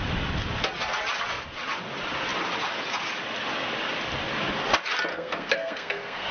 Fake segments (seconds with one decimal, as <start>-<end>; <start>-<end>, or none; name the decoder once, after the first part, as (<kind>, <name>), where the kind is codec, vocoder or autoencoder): 5.1-6.3 (codec, SNAC)

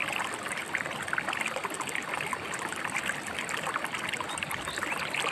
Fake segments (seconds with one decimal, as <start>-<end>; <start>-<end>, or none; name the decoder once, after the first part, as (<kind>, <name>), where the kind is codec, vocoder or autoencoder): none

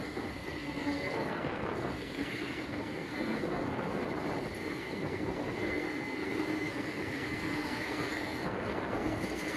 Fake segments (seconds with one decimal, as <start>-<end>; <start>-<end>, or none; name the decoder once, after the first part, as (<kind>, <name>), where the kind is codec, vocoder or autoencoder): 0.0-4.0 (codec, SNAC); 4.6-9.6